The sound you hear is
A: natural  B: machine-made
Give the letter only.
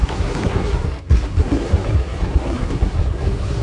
B